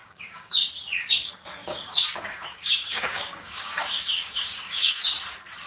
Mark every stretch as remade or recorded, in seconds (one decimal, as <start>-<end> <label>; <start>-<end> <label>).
0.0-0.7 remade; 0.7-1.6 recorded; 1.6-5.0 remade; 5.0-5.7 recorded